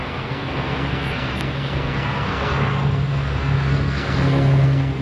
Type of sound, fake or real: fake